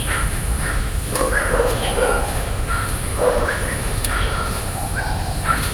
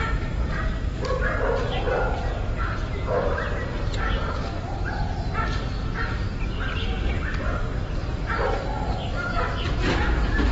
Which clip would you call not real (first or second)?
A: first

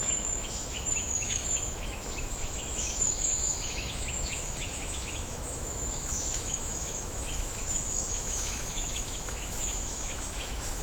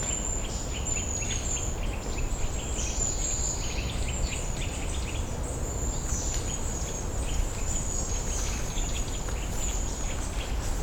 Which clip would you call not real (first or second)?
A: first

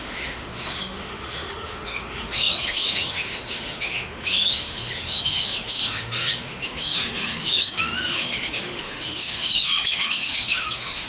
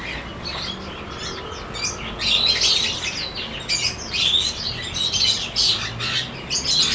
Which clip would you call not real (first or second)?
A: first